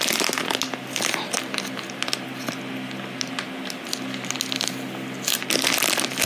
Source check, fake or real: real